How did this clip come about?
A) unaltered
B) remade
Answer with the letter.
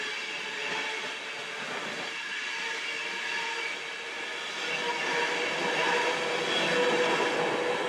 A